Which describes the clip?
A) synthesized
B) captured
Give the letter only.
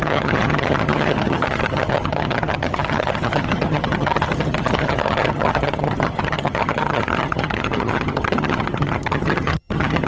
A